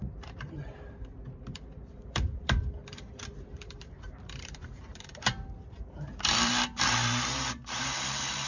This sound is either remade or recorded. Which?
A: remade